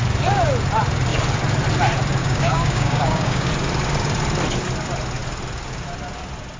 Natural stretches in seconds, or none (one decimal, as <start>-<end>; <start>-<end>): 0.0-2.2; 3.5-6.6